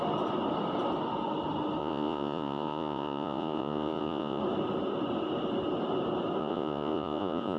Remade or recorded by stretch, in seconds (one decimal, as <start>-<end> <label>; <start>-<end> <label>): 0.0-1.8 recorded; 1.8-4.4 remade; 4.4-6.4 recorded; 6.4-7.6 remade